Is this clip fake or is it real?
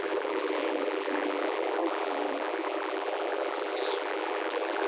fake